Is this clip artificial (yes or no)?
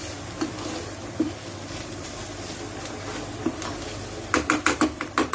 no